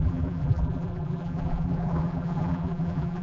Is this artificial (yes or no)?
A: yes